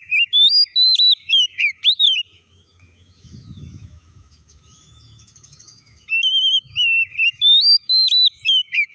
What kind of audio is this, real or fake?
fake